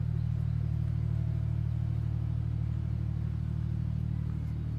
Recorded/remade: recorded